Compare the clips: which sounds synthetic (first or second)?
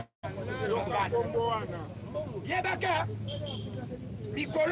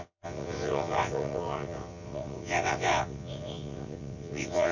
second